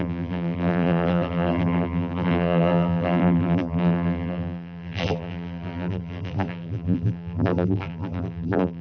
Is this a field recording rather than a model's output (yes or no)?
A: no